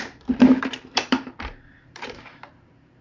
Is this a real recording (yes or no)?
no